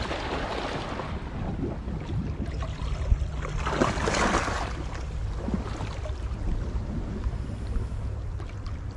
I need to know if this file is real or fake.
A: real